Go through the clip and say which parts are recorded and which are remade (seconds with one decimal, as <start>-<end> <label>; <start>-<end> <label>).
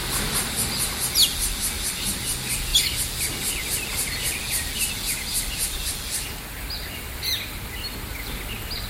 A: 0.0-8.9 recorded